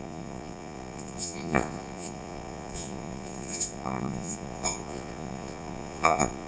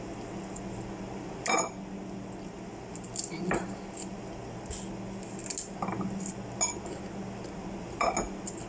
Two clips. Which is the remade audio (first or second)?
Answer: first